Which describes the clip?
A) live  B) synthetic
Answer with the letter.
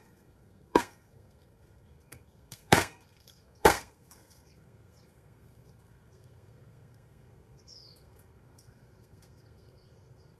B